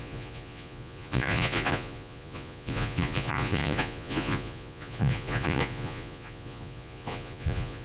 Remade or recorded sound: remade